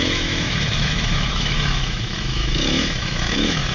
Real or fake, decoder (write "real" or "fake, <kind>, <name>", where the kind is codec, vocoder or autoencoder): fake, autoencoder, DAC-VAE